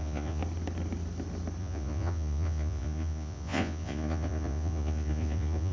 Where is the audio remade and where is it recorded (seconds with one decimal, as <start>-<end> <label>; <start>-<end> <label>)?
0.0-0.4 remade; 0.4-1.6 recorded; 1.6-5.7 remade